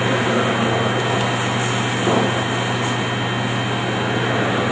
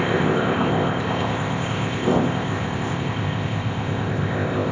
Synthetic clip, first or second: second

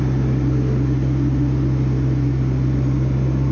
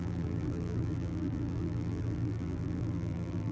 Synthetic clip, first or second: second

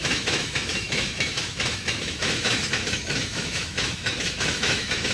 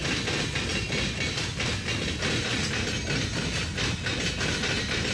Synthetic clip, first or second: first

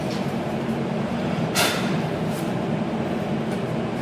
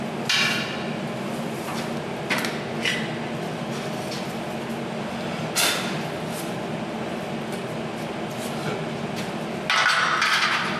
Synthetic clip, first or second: first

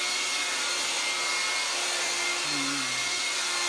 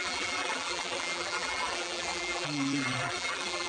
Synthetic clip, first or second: second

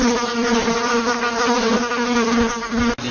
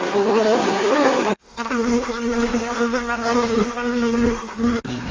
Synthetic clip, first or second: second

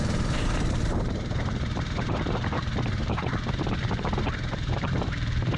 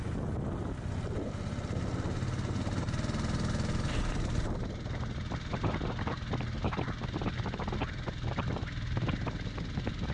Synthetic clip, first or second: first